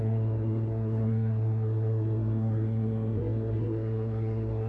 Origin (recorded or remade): remade